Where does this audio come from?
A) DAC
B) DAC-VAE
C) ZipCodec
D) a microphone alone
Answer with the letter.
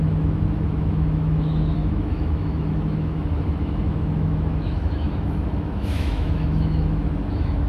B